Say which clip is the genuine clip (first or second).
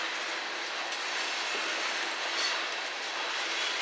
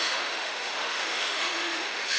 first